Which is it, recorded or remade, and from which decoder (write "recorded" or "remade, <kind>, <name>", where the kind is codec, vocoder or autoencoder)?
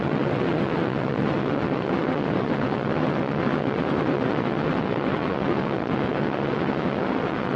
remade, vocoder, WaveNeXt